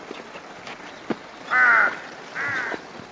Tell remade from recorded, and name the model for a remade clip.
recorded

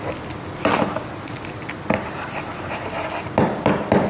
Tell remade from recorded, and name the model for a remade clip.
recorded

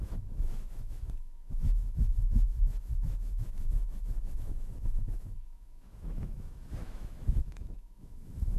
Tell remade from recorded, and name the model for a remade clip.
remade, autoencoder, DAC-VAE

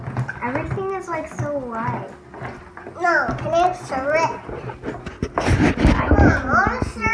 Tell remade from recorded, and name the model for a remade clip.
recorded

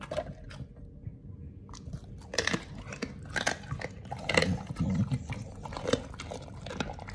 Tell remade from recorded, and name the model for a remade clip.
recorded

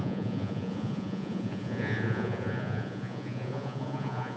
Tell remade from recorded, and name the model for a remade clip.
remade, vocoder, Vocos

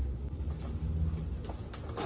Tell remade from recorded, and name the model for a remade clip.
recorded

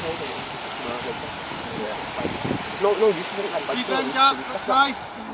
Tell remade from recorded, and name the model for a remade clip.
recorded